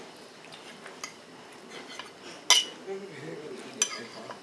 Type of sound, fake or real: real